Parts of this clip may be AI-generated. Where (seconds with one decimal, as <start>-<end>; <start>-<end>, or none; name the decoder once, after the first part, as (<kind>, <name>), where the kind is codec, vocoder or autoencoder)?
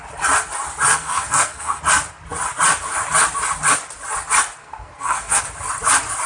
0.9-1.8 (codec, SNAC); 4.6-5.4